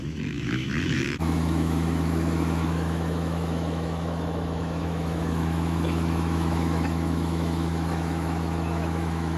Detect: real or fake fake